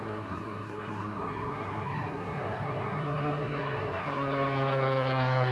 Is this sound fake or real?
fake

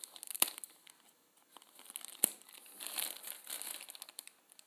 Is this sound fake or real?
real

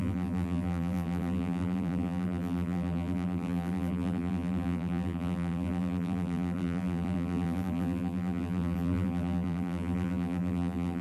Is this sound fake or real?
fake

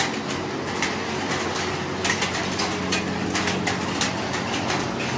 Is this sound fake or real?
real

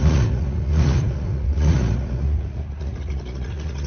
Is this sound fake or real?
fake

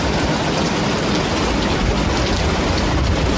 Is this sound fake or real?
real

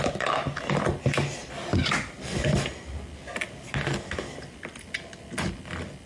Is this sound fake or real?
real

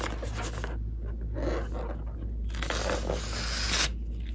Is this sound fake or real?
real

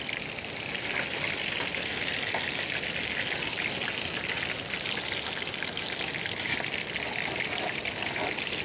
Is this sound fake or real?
real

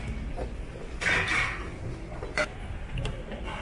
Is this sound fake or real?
real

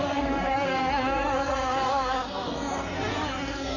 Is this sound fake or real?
fake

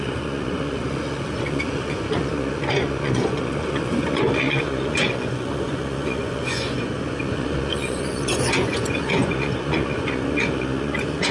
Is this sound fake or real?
fake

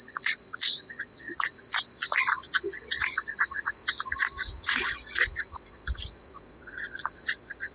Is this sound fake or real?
fake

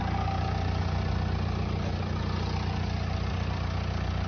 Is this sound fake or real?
real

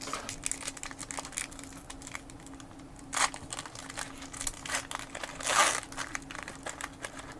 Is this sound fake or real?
real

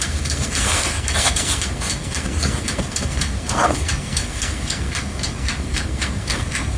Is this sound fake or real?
fake